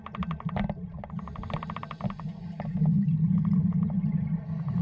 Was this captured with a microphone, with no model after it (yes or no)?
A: yes